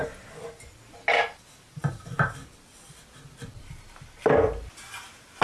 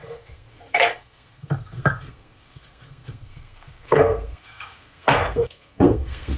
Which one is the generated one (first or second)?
second